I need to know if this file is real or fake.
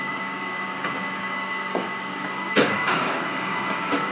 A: fake